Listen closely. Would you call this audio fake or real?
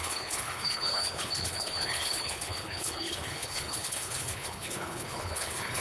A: fake